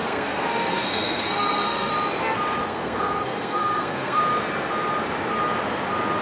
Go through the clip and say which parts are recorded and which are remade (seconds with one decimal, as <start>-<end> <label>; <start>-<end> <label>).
0.0-1.9 remade; 1.9-2.7 recorded; 2.7-4.2 remade; 4.2-6.2 recorded